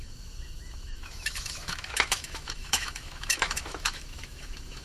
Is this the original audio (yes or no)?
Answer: no